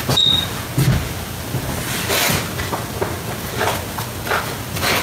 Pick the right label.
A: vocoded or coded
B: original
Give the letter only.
B